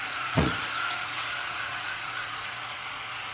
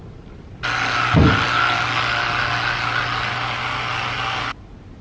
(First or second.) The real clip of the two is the second